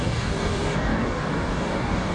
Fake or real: fake